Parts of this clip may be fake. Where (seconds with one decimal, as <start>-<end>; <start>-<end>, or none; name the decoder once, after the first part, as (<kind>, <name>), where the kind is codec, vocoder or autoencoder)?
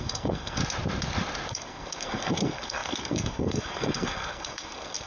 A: 0.0-0.6 (codec, SNAC); 1.5-5.1